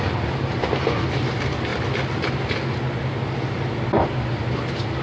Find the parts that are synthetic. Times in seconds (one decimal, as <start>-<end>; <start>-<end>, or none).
none